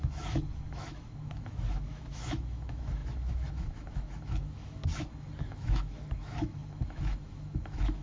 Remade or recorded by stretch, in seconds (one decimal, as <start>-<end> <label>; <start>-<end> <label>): 0.0-4.8 remade; 4.8-5.4 recorded; 5.4-8.0 remade